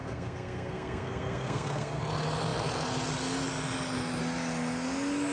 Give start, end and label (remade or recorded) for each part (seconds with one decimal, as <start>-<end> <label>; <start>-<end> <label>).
0.0-2.0 remade; 2.0-5.3 recorded